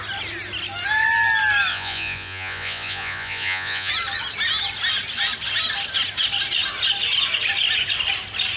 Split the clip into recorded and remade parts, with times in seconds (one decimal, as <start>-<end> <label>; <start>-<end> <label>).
0.0-1.7 recorded; 1.7-3.9 remade; 3.9-8.6 recorded